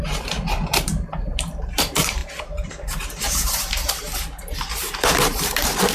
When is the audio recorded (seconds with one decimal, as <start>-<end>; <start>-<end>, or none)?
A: none